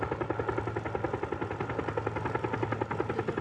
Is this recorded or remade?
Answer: recorded